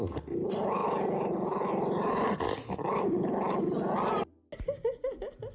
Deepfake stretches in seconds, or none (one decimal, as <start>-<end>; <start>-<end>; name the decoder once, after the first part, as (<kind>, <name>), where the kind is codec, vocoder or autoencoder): none